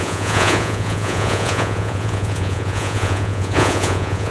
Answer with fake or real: fake